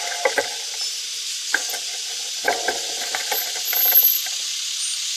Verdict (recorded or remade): recorded